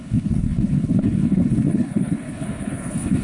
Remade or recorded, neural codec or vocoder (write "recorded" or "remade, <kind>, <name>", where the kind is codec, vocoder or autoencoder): remade, codec, HILCodec